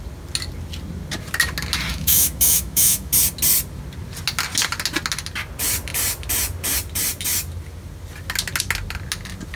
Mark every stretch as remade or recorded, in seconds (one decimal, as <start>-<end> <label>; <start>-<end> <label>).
0.0-1.9 recorded; 1.9-3.1 remade; 3.1-9.6 recorded